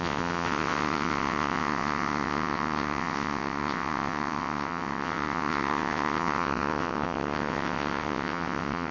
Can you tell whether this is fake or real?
fake